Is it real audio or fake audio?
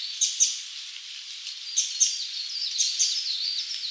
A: real